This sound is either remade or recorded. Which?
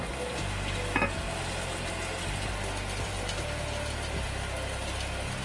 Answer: recorded